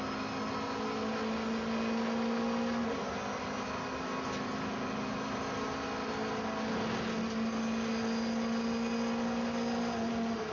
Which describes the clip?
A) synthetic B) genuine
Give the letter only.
B